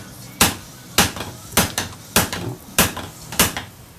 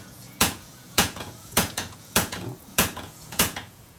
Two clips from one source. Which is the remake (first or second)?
second